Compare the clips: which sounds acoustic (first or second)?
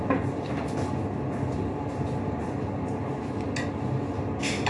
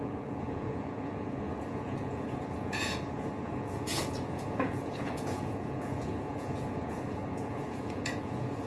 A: first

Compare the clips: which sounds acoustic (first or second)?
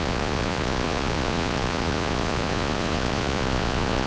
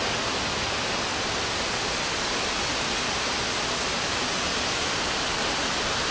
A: second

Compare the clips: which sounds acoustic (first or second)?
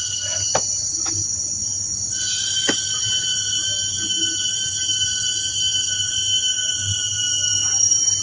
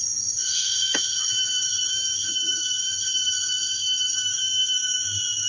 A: first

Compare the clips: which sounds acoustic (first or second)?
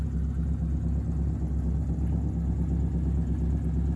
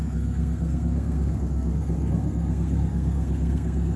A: first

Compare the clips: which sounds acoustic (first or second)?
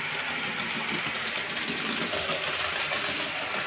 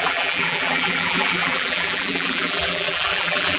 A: first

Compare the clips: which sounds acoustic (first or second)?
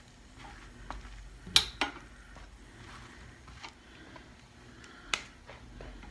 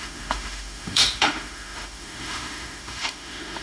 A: first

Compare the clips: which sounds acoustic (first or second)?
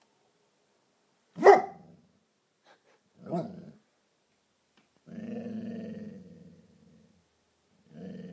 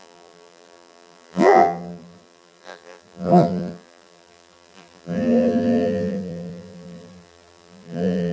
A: first